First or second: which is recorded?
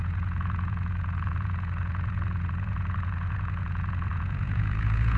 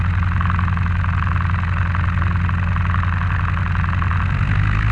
second